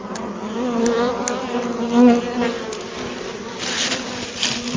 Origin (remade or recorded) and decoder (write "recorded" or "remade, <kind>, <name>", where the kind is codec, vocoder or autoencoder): recorded